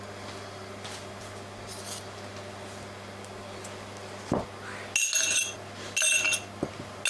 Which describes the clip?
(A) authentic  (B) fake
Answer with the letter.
A